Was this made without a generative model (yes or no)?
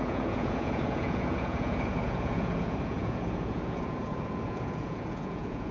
no